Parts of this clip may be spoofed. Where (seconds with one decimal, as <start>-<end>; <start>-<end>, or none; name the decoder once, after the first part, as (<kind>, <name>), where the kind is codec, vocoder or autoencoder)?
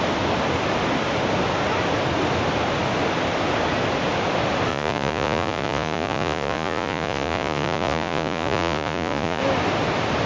4.7-9.4 (vocoder, Vocos)